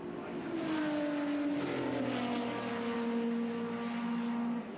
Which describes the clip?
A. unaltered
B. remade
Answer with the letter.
A